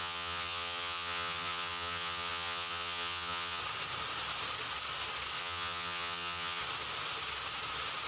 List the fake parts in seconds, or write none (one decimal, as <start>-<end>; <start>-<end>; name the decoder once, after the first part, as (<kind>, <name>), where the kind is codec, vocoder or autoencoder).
0.0-3.6 (vocoder, HiFi-GAN); 5.4-6.6